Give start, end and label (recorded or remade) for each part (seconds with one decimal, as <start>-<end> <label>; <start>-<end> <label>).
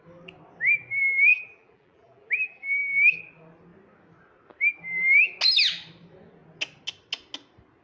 0.0-1.3 recorded; 1.3-2.8 remade; 2.8-7.8 recorded